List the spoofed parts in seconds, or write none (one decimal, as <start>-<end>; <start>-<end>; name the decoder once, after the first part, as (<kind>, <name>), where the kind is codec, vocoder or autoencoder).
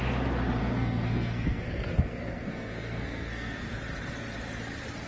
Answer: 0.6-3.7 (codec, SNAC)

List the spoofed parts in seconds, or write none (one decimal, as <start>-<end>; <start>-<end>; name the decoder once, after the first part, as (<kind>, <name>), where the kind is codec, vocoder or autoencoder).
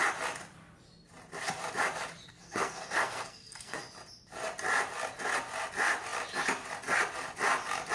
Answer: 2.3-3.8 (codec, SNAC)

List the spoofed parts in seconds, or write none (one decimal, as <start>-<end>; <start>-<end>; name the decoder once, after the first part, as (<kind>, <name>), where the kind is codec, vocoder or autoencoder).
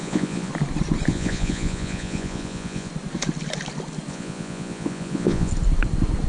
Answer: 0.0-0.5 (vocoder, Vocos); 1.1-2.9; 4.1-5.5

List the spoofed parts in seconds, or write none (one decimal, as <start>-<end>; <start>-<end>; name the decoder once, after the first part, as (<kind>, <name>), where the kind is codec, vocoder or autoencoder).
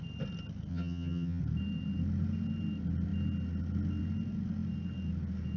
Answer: 0.7-1.4 (vocoder, HiFi-GAN)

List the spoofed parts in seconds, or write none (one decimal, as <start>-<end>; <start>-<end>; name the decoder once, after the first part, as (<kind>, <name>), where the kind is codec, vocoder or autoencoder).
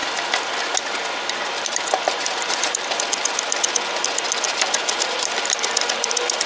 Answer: 1.3-6.5 (vocoder, BigVGAN v2)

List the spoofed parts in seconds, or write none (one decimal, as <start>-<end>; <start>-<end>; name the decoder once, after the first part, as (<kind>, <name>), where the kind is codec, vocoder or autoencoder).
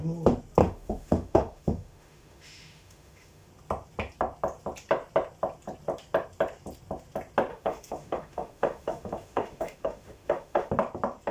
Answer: 0.6-3.5 (autoencoder, DAC-VAE); 7.5-10.7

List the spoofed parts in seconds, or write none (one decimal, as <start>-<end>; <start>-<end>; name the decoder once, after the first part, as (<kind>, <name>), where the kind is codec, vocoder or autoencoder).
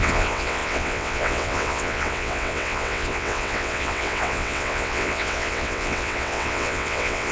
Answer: 0.0-7.3 (vocoder, WaveNeXt)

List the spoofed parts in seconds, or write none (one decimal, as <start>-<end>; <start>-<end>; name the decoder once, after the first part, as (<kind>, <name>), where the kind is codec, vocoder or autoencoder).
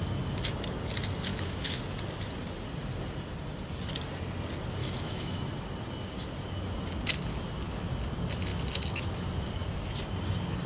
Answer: 1.3-1.8 (autoencoder, DAC-VAE); 4.8-5.4